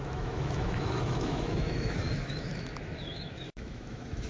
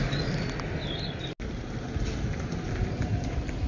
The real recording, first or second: second